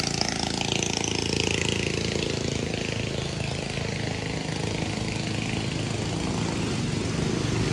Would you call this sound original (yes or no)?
yes